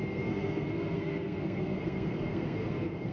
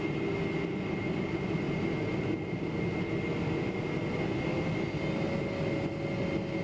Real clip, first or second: second